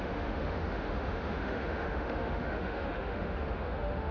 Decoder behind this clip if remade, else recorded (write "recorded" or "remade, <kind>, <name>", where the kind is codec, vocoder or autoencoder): remade, autoencoder, DAC-VAE